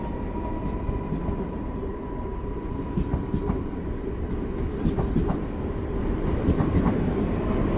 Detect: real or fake real